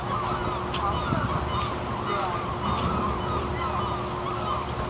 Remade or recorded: recorded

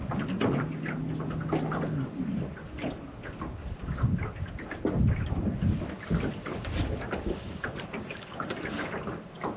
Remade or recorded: recorded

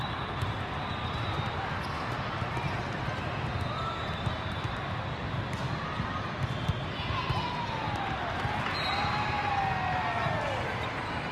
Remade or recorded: recorded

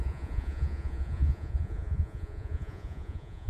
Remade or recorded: remade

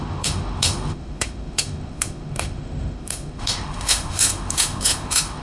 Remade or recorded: remade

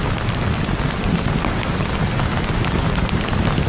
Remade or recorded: recorded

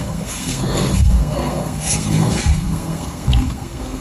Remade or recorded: remade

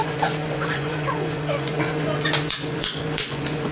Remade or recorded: remade